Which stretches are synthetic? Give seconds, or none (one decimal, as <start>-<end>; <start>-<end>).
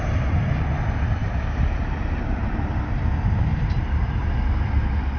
1.2-2.8; 3.5-4.3